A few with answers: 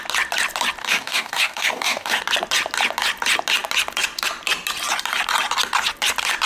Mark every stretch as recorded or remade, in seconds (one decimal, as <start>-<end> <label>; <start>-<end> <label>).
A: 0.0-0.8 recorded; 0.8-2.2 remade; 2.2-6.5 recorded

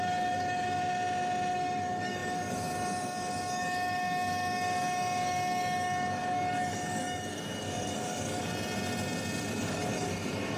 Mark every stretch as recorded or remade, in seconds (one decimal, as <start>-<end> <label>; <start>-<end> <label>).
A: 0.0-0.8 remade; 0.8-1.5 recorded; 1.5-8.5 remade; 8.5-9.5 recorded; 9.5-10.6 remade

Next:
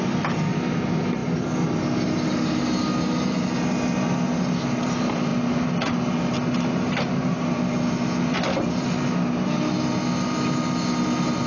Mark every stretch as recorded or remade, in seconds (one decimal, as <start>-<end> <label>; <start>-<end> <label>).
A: 0.0-11.5 recorded